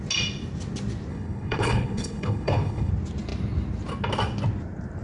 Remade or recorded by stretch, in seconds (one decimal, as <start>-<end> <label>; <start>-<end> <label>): 0.0-1.1 recorded; 1.1-2.9 remade; 2.9-5.0 recorded